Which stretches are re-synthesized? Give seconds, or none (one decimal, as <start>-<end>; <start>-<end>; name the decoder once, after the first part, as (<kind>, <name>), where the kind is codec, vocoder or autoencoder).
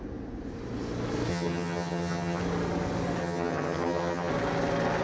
1.3-2.4 (vocoder, HiFi-GAN); 3.2-4.3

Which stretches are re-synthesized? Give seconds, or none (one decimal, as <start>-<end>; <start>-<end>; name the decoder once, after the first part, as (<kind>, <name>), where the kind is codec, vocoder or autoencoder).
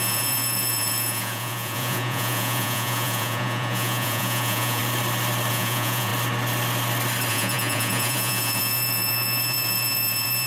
0.0-4.8 (vocoder, Vocos); 5.5-6.1; 7.3-10.5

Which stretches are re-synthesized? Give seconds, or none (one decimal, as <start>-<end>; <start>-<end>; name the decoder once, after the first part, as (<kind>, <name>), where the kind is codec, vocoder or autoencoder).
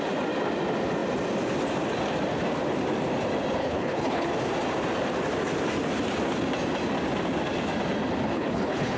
3.6-4.3 (codec, HILCodec); 8.3-9.0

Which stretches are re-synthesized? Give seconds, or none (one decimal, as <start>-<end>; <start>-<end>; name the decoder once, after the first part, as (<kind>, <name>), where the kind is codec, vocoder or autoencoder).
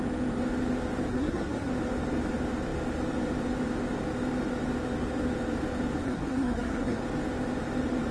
1.1-1.7 (codec, SNAC); 6.0-7.0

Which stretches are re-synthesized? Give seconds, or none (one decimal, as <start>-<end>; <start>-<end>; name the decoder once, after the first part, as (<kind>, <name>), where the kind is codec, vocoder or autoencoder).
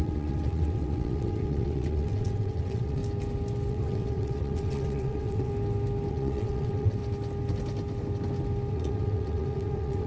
0.0-3.0 (vocoder, WaveNeXt); 3.7-5.5; 6.1-7.0; 8.7-10.1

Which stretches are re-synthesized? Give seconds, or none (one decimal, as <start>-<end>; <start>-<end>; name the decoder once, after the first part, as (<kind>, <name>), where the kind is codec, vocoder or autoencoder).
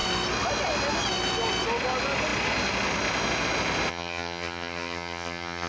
3.9-5.7 (vocoder, HiFi-GAN)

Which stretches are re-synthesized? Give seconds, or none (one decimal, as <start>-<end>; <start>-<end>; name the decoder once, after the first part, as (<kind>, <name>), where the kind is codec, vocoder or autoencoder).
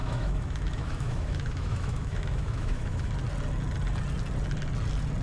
0.0-3.1 (autoencoder, DAC-VAE)